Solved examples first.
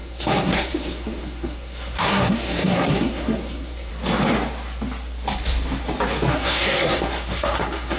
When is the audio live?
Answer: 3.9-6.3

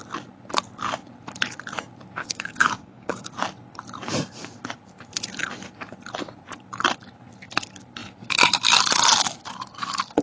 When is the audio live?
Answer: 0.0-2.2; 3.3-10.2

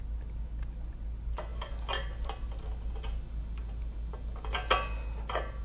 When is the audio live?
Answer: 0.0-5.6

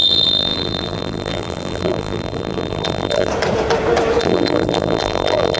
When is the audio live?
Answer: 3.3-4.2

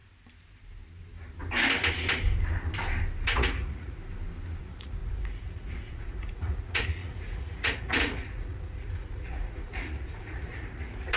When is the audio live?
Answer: 0.0-3.2; 4.0-4.6

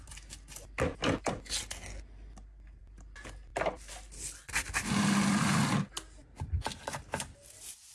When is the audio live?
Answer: 0.0-7.9

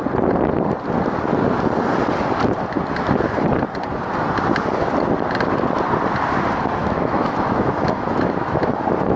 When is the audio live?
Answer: 0.0-6.8; 8.6-9.2

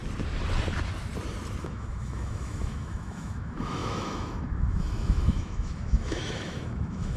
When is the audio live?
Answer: 0.0-1.6